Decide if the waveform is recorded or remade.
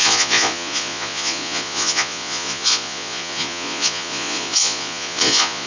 remade